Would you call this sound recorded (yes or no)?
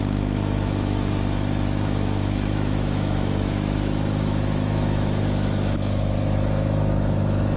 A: no